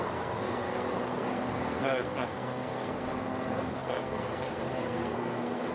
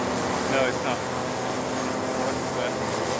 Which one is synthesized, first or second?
first